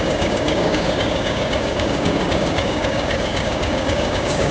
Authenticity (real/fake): fake